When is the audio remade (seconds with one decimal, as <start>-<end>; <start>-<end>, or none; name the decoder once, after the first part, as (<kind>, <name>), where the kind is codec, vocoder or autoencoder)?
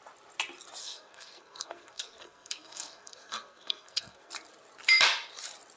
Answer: 0.8-4.3 (codec, SNAC)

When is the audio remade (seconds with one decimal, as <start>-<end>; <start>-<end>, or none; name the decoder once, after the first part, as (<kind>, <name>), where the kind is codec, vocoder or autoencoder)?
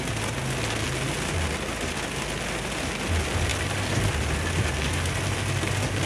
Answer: none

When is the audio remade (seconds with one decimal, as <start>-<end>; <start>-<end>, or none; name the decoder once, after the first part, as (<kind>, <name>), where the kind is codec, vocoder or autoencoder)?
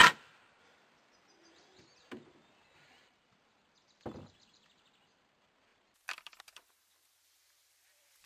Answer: 0.0-0.6 (vocoder, BigVGAN v2)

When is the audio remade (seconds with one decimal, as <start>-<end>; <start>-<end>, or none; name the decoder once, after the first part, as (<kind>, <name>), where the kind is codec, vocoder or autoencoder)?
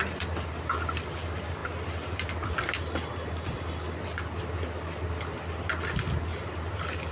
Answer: none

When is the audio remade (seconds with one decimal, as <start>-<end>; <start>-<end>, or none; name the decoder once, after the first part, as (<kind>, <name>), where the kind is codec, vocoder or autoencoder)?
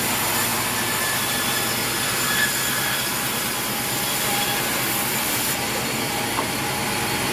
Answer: none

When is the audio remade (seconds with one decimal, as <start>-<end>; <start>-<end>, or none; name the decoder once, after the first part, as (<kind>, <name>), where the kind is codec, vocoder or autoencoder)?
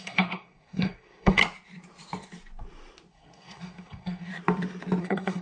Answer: 0.0-1.4 (codec, SNAC); 3.1-4.3; 5.0-5.4